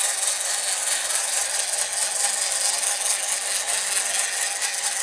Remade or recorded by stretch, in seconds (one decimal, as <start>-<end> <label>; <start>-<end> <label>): 0.0-0.8 recorded; 0.8-1.4 remade; 1.4-5.0 recorded